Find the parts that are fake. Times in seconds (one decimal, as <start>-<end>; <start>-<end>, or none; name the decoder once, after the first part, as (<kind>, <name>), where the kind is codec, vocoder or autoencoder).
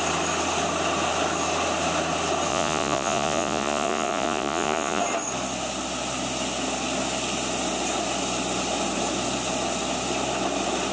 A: 2.5-5.0 (vocoder, Vocos)